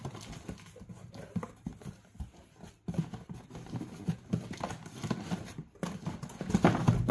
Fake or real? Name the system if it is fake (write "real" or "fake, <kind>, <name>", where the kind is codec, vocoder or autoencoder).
real